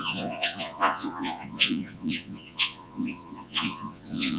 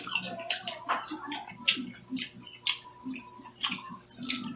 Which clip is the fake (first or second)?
first